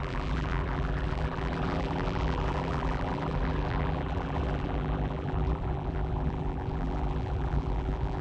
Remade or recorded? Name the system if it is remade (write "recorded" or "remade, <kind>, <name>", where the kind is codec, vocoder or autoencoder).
remade, vocoder, BigVGAN v2